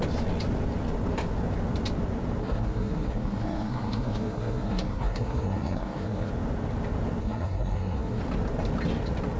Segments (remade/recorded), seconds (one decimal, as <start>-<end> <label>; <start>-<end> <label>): 0.0-2.4 recorded; 2.4-6.3 remade; 6.3-7.2 recorded; 7.2-8.2 remade; 8.2-9.4 recorded